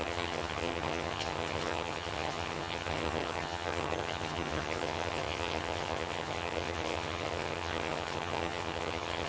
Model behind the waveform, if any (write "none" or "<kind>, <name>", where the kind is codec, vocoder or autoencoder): vocoder, HiFi-GAN